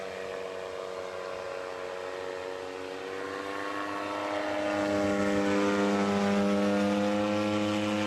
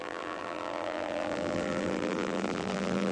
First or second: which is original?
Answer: first